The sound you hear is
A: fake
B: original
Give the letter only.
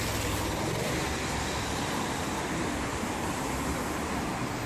A